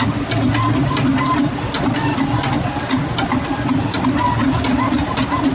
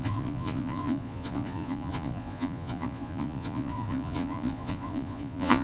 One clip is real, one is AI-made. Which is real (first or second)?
first